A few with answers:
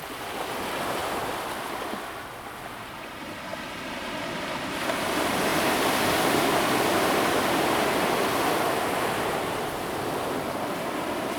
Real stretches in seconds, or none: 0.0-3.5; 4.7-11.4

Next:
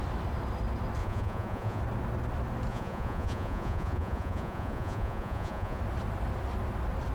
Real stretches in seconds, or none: 0.0-1.0; 1.8-2.7; 5.8-7.1

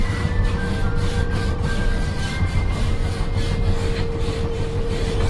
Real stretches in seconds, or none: 3.0-4.2

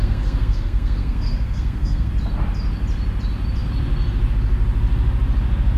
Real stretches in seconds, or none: 2.1-5.8

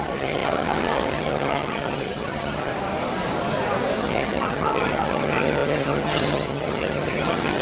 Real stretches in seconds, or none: 2.7-4.0